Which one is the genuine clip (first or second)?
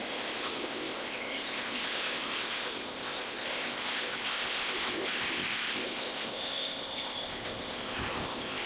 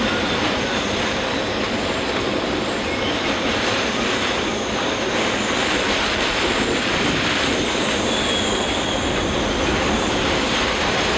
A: second